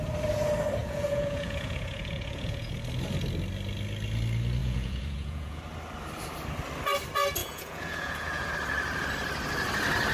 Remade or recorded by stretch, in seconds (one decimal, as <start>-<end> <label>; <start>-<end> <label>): 0.0-0.8 recorded; 0.8-2.7 remade; 2.7-4.6 recorded; 4.6-5.6 remade; 5.6-7.4 recorded; 7.4-8.5 remade; 8.5-10.1 recorded